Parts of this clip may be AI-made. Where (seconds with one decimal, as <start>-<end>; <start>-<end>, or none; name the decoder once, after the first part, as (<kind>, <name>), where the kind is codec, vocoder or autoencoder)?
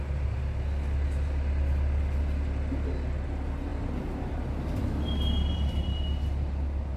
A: none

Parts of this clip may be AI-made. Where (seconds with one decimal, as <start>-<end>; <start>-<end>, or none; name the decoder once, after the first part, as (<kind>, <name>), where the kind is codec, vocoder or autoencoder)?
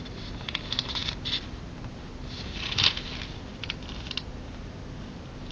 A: none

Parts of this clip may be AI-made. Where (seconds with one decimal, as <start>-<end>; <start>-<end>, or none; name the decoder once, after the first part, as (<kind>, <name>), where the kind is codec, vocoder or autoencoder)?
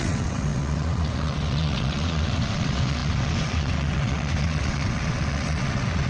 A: 0.0-6.1 (vocoder, WaveNeXt)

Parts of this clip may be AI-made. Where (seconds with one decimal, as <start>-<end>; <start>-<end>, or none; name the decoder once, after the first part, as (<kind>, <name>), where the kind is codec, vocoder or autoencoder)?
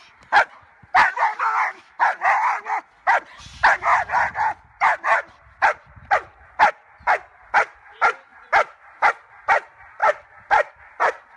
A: 3.9-6.7 (vocoder, BigVGAN v2); 8.3-9.1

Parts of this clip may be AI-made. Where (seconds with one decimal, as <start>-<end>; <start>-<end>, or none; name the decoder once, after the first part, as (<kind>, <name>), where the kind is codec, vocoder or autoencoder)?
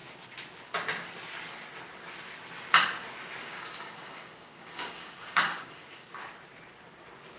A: 3.4-6.1 (codec, DAC)